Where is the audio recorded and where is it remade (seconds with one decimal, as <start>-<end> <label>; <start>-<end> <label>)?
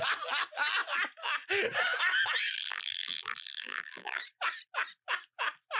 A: 0.0-2.5 recorded; 2.5-4.2 remade; 4.2-5.8 recorded